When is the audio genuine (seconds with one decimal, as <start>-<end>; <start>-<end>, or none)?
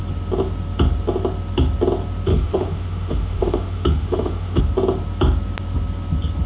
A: 0.0-2.3; 4.6-6.5